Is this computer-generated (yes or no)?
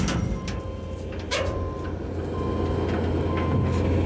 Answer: no